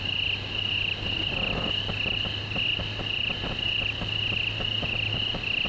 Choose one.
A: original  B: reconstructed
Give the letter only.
A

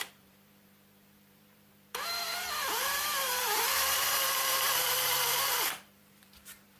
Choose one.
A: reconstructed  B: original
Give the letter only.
A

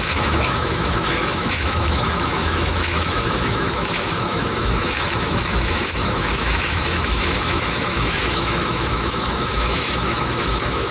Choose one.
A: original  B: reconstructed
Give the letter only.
B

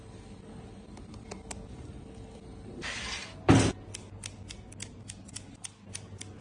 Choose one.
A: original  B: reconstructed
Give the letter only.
A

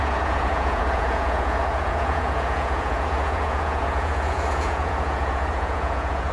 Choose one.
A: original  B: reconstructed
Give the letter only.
B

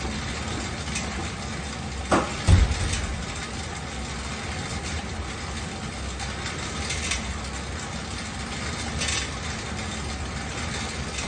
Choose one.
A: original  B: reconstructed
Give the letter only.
A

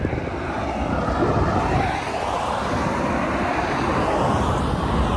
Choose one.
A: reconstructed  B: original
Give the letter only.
B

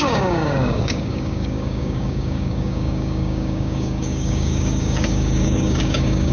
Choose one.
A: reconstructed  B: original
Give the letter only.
A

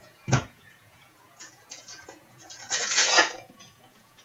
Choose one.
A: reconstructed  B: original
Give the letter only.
A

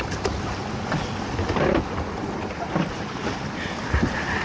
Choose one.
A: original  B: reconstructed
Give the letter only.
A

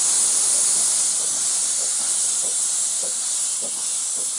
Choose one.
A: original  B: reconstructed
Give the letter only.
A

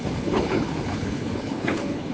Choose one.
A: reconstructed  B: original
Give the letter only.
A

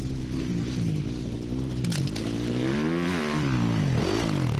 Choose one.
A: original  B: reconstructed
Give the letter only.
A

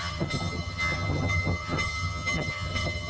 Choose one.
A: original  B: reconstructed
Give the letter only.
B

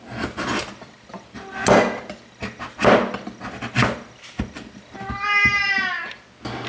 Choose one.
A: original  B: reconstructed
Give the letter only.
A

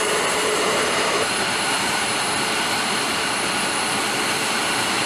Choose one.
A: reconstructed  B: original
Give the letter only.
A